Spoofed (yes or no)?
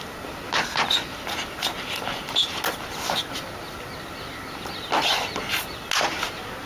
no